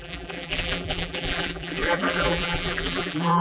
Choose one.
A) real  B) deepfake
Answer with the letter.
B